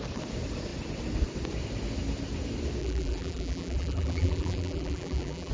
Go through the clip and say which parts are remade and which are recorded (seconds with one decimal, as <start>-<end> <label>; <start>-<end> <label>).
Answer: 0.0-2.8 recorded; 2.8-5.5 remade